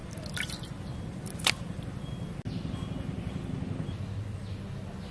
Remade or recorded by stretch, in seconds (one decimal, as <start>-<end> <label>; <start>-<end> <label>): 0.0-2.0 remade; 2.0-5.1 recorded